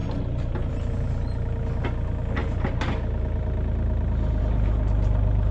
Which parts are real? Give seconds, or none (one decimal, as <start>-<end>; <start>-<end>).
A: 0.0-2.4; 4.4-5.5